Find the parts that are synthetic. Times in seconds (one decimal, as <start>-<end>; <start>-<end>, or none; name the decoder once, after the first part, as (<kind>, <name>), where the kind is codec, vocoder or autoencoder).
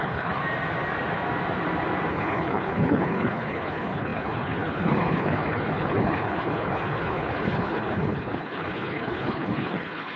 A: 0.0-0.4 (codec, HILCodec); 2.1-10.2